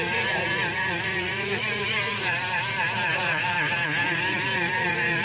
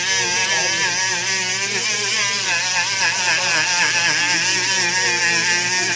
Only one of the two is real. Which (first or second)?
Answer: second